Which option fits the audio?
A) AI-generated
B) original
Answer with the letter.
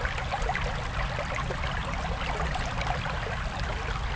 B